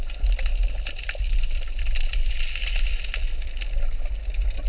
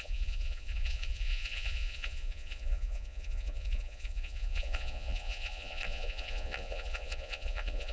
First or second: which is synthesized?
second